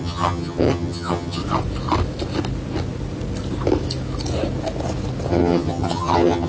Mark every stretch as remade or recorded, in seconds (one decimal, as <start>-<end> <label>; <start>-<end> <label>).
0.0-1.4 remade; 1.4-5.3 recorded; 5.3-6.5 remade